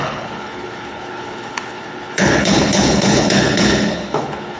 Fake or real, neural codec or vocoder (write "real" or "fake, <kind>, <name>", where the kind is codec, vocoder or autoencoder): fake, codec, HILCodec